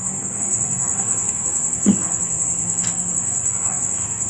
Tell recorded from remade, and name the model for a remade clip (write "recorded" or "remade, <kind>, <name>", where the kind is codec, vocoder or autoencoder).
remade, codec, SNAC